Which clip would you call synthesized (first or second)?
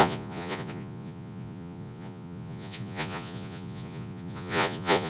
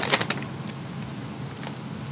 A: first